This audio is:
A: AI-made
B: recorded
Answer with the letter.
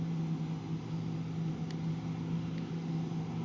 B